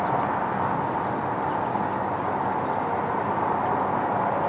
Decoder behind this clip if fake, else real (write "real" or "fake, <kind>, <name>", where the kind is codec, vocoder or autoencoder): real